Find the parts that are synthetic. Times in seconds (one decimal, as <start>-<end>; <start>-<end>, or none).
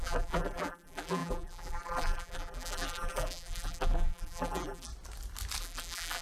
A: 0.0-4.9; 5.6-6.2